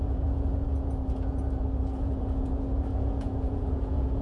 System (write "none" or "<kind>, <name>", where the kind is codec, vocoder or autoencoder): vocoder, Vocos